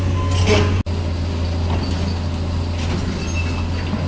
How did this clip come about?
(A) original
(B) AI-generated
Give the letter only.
A